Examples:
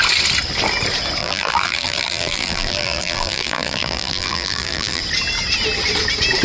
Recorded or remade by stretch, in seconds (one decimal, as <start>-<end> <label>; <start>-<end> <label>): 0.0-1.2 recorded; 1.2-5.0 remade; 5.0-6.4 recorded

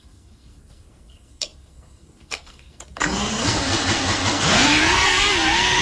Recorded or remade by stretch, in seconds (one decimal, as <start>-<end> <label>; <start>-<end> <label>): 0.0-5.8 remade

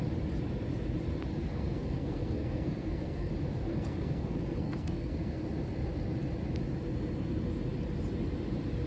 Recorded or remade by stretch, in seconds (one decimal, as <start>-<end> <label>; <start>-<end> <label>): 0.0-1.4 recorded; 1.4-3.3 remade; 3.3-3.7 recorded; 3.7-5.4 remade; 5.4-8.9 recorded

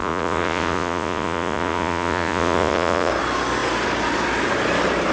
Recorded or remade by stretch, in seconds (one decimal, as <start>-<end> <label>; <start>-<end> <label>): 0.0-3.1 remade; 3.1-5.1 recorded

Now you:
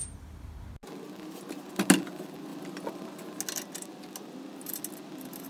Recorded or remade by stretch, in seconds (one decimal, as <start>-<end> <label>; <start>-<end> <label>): 0.0-0.5 remade; 0.5-2.5 recorded; 2.5-3.4 remade; 3.4-5.5 recorded